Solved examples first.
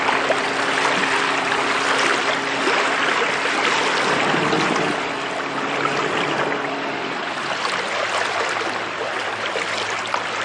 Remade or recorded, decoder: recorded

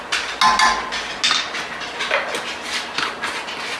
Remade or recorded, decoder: recorded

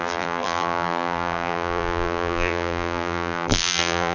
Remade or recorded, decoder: remade, vocoder, BigVGAN v2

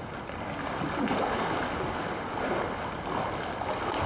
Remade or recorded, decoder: recorded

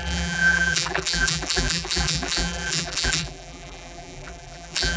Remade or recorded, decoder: remade, vocoder, BigVGAN v2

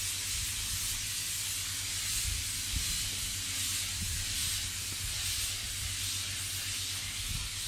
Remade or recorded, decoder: recorded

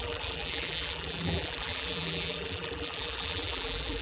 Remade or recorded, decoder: remade, vocoder, BigVGAN v2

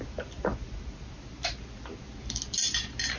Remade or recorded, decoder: recorded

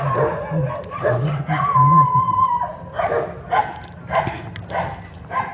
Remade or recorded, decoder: recorded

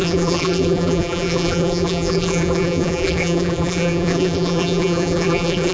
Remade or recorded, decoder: remade, vocoder, BigVGAN v2